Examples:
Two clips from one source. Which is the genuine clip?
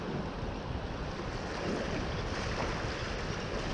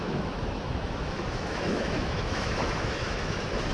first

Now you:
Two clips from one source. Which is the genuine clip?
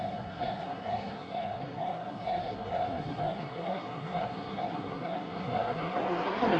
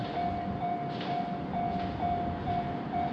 second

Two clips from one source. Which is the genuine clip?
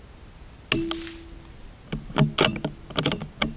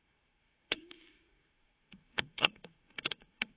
first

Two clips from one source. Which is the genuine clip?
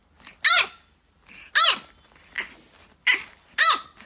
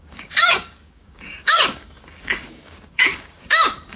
first